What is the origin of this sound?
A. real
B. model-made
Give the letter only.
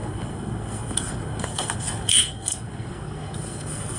B